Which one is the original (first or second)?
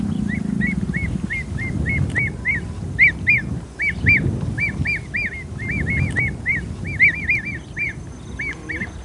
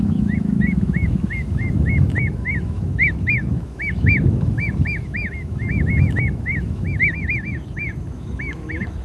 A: first